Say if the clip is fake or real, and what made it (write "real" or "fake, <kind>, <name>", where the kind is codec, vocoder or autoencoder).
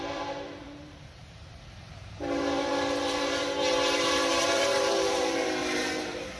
fake, vocoder, BigVGAN v2